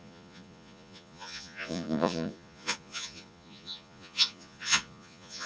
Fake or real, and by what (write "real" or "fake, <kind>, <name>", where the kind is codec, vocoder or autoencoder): fake, vocoder, Vocos